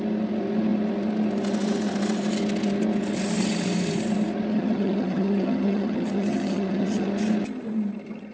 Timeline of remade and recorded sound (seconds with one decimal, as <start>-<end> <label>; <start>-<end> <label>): 0.0-4.5 recorded; 4.5-7.1 remade; 7.1-8.3 recorded